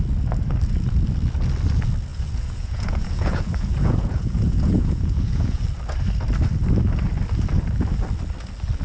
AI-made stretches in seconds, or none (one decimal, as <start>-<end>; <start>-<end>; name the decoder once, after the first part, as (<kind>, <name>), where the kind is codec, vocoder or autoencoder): 2.1-5.6 (vocoder, Vocos)